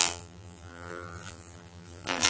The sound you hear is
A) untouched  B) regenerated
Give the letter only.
B